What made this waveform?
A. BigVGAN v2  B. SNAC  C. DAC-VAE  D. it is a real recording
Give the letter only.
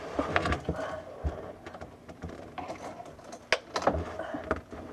D